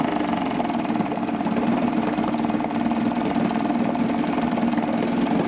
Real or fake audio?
real